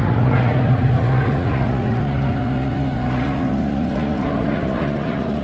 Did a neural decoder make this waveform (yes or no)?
yes